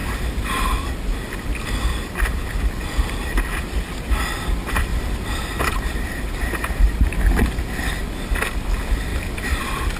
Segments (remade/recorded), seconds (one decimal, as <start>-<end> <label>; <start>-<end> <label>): 0.0-0.6 remade; 0.6-4.9 recorded; 4.9-7.2 remade; 7.2-9.1 recorded; 9.1-9.6 remade; 9.6-10.0 recorded

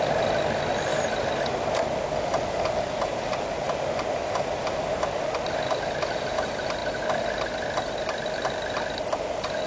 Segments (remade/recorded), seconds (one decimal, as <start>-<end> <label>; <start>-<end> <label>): 0.0-9.7 recorded